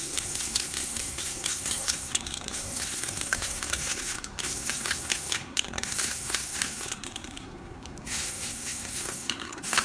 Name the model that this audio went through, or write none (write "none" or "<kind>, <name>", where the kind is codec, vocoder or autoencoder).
codec, SNAC